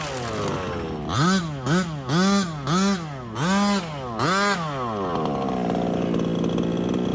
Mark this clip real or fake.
real